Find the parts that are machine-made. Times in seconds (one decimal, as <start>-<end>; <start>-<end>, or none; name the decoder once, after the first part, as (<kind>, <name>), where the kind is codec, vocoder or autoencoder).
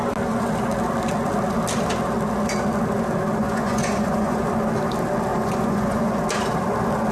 3.4-4.4 (vocoder, Vocos); 5.3-6.1